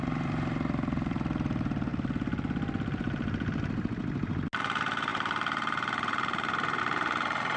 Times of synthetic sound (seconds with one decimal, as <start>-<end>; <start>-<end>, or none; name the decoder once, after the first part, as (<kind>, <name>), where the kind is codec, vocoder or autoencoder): 0.0-1.9 (vocoder, BigVGAN v2); 4.6-7.6